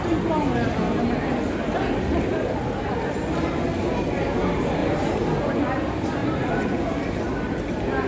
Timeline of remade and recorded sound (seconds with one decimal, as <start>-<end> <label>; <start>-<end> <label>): 0.0-4.8 recorded; 4.8-5.6 remade; 5.6-6.2 recorded; 6.2-7.2 remade; 7.2-8.1 recorded